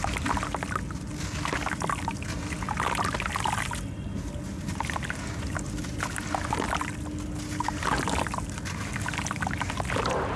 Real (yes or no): yes